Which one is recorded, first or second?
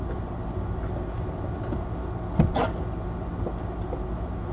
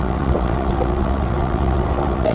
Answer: first